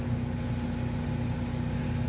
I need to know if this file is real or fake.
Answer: real